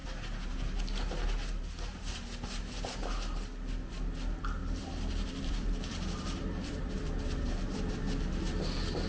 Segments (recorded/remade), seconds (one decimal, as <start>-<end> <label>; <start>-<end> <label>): 0.0-4.6 recorded; 4.6-7.9 remade; 7.9-9.1 recorded